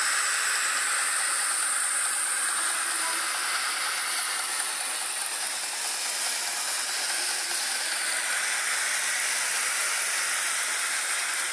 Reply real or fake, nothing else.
real